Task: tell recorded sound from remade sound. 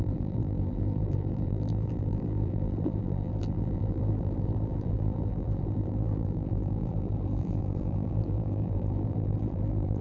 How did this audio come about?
remade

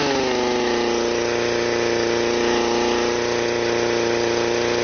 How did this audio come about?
recorded